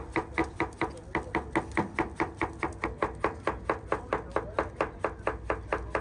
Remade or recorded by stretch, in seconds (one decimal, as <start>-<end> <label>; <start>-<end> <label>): 0.0-6.0 recorded